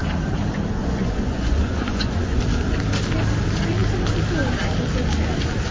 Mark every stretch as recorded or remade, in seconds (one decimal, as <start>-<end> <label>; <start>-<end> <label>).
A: 0.0-0.8 recorded; 0.8-2.4 remade; 2.4-5.7 recorded